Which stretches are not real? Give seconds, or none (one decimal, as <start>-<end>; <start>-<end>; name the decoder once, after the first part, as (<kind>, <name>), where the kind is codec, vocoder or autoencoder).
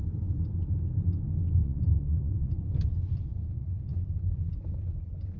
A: 1.6-2.8 (vocoder, Vocos); 3.6-4.1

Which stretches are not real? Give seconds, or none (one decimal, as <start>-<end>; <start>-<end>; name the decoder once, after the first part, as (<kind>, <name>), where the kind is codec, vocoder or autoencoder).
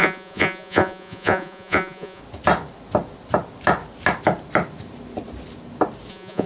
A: 0.0-2.2 (vocoder, Vocos); 6.1-6.5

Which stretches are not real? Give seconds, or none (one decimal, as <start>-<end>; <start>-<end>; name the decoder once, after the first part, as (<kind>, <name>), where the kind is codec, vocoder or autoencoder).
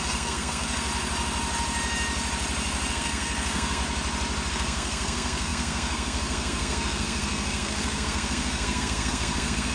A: 0.0-0.9 (codec, SNAC); 2.9-3.8; 4.5-9.7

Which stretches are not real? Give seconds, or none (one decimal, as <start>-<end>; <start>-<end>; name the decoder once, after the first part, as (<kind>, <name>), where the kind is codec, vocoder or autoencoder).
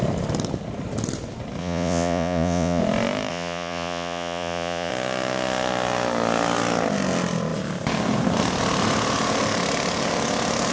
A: 1.6-2.8 (vocoder, Vocos); 3.3-4.9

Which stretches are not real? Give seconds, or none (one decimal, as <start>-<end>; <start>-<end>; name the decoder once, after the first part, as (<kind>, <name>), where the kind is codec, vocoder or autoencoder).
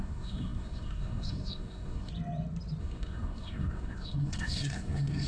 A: 0.0-2.1 (codec, SNAC); 2.8-5.3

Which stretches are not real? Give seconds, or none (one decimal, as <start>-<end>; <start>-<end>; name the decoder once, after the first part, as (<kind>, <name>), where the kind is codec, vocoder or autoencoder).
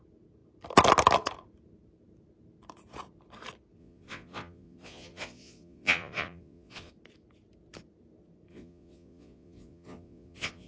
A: 3.8-6.9 (vocoder, Vocos); 8.5-10.7